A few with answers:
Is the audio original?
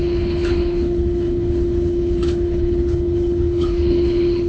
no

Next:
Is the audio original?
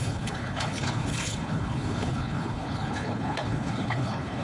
no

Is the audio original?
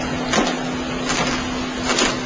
yes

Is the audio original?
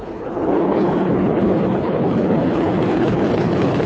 no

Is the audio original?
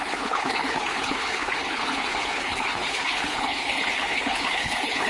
no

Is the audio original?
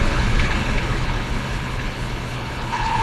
no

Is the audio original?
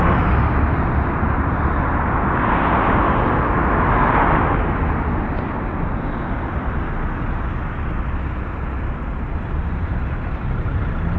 yes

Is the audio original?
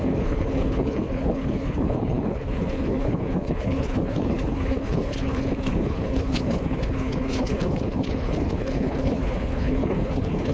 no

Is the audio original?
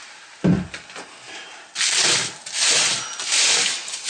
yes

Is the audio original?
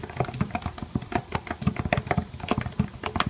yes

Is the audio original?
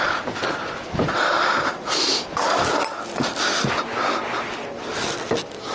yes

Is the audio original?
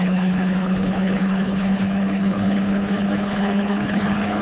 no